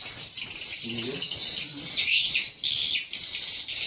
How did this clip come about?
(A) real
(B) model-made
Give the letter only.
A